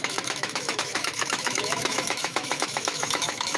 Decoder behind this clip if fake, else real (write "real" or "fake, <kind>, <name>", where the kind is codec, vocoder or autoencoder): fake, autoencoder, DAC-VAE